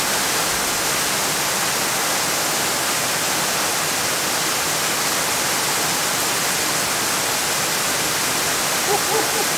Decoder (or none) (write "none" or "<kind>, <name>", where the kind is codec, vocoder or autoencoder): none